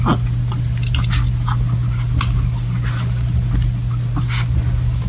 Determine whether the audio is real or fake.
real